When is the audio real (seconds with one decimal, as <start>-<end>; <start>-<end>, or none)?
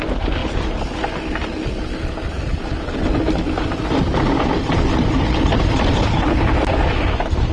0.0-6.0; 6.5-7.5